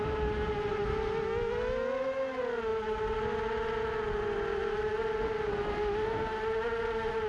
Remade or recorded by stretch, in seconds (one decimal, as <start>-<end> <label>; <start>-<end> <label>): 0.0-7.3 recorded